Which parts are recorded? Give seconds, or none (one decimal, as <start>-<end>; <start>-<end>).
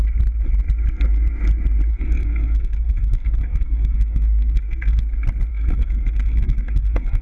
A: 0.0-1.9; 5.0-5.5